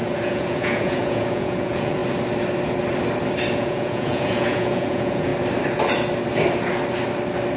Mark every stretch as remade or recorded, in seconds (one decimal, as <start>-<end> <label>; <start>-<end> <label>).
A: 0.0-2.0 remade; 2.0-3.5 recorded; 3.5-5.3 remade; 5.3-7.6 recorded